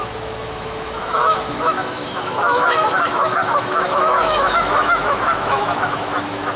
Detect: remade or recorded remade